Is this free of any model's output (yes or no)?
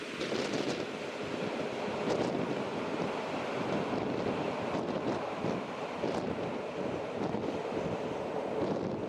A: yes